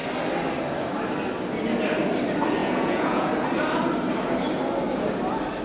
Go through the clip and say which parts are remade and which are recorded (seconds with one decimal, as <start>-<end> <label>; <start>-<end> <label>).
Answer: 0.0-2.6 recorded; 2.6-3.3 remade; 3.3-5.6 recorded